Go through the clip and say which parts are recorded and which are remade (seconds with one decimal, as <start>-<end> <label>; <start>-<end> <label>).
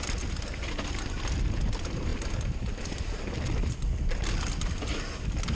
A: 0.0-5.5 recorded